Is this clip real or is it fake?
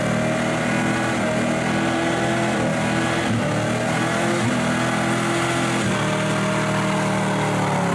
real